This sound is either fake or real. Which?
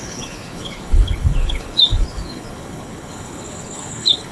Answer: fake